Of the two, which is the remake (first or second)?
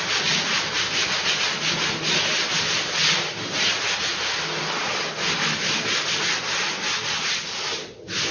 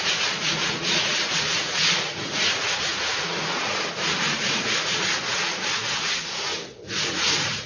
second